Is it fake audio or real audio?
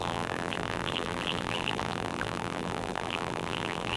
fake